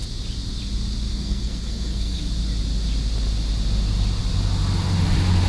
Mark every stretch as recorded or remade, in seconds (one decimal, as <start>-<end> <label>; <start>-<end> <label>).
0.0-1.1 recorded; 1.1-2.2 remade; 2.2-5.5 recorded